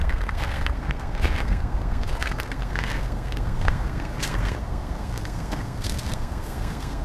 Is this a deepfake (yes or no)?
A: yes